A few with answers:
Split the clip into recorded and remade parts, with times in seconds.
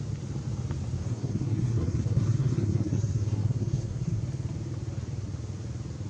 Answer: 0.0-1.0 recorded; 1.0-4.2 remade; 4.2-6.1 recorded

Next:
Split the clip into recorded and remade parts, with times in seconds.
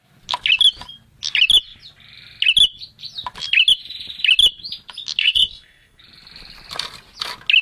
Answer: 0.0-5.2 recorded; 5.2-6.0 remade; 6.0-7.6 recorded